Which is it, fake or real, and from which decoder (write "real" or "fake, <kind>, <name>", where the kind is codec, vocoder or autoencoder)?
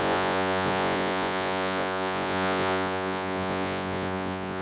fake, vocoder, Vocos